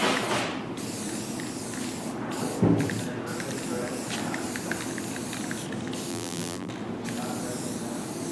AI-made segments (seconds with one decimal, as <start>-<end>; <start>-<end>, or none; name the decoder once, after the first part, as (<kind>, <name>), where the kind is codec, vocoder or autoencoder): 6.1-6.7 (vocoder, BigVGAN v2)